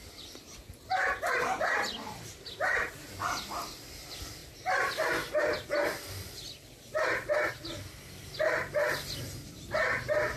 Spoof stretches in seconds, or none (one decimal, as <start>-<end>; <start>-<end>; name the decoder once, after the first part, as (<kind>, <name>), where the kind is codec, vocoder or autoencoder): none

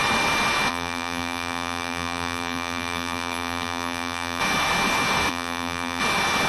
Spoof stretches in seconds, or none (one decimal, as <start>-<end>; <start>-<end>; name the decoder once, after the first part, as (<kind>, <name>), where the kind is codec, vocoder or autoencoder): 0.7-4.4 (vocoder, BigVGAN v2); 5.3-6.0

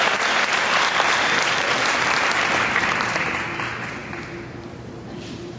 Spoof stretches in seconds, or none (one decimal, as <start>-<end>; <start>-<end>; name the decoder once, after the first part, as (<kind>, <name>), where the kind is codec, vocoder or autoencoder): 0.0-4.0 (vocoder, BigVGAN v2); 4.9-5.6